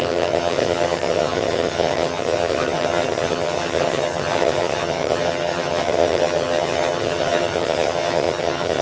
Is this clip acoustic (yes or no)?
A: no